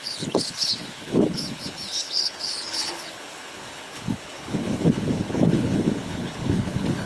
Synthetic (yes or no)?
yes